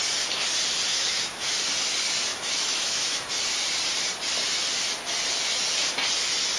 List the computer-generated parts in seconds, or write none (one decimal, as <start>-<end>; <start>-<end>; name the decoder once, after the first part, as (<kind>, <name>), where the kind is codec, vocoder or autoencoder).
0.9-1.5 (autoencoder, DAC-VAE); 2.3-3.3